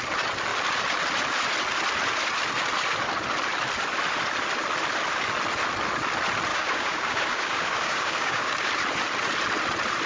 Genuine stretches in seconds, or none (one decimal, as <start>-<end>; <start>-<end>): 0.0-6.5; 8.7-10.1